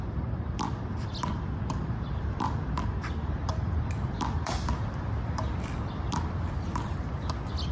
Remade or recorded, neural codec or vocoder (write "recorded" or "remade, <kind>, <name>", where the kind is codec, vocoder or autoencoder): remade, vocoder, BigVGAN v2